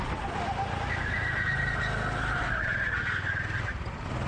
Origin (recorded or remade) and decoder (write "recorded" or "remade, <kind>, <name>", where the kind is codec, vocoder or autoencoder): recorded